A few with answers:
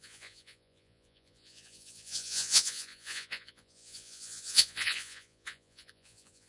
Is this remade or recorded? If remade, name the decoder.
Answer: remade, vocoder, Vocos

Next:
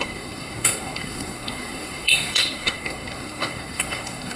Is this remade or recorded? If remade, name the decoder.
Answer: remade, codec, SNAC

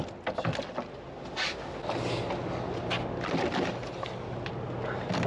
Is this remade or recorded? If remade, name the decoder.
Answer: recorded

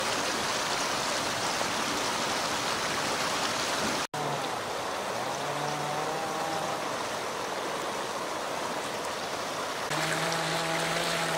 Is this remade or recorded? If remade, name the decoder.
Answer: recorded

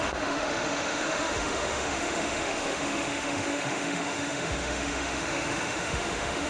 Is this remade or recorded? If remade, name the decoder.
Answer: remade, autoencoder, DAC-VAE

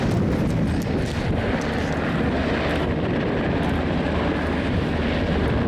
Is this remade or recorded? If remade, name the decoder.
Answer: recorded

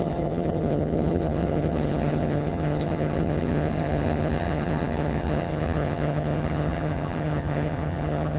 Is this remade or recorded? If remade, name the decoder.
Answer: remade, vocoder, HiFi-GAN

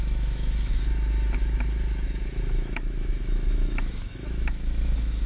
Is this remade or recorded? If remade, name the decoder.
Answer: remade, autoencoder, DAC-VAE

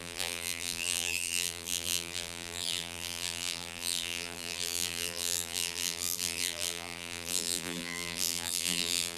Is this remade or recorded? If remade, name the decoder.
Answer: remade, vocoder, BigVGAN v2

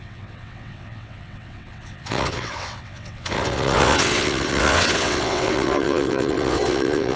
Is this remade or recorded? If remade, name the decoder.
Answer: remade, vocoder, WaveNeXt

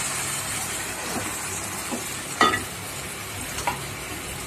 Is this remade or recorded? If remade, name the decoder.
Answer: remade, vocoder, BigVGAN v2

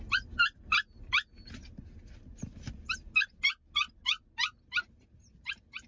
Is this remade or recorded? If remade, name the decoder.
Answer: recorded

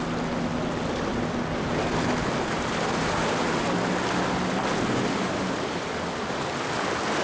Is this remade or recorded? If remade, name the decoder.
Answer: recorded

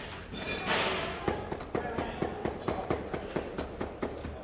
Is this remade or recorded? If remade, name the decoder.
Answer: recorded